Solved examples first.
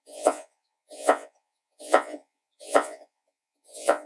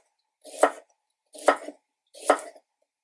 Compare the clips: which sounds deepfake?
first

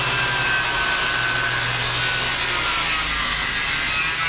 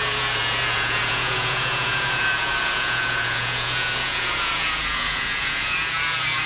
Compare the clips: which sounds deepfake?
second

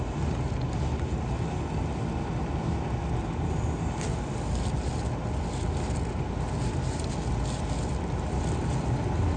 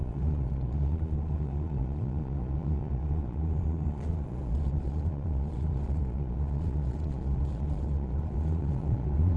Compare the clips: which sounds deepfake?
second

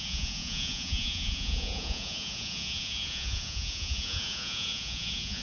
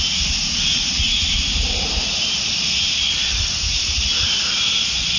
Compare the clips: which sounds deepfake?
first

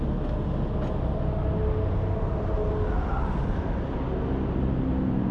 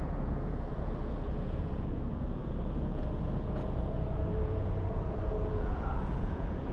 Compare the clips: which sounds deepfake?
second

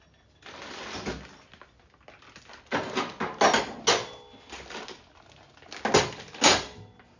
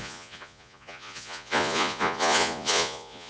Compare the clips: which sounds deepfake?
second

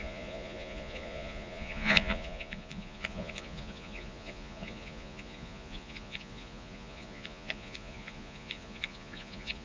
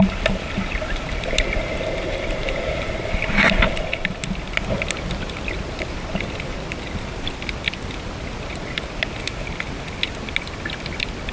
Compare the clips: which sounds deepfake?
first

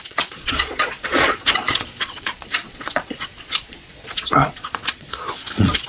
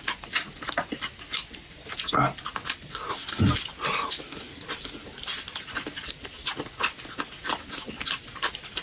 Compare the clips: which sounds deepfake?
first